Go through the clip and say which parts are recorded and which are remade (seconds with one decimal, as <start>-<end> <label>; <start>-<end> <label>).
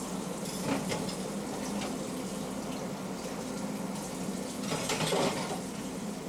0.0-6.3 recorded